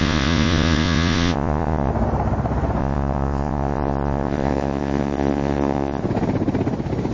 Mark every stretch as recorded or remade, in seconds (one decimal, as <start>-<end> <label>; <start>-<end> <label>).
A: 0.0-1.9 remade; 1.9-2.8 recorded; 2.8-6.0 remade; 6.0-7.1 recorded